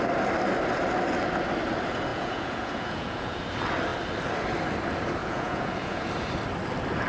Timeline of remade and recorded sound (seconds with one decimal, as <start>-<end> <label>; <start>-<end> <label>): 0.0-2.1 recorded; 2.1-3.4 remade; 3.4-5.2 recorded; 5.2-6.0 remade; 6.0-7.1 recorded